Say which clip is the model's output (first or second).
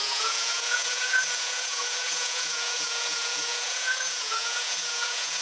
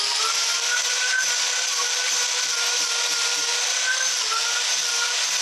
first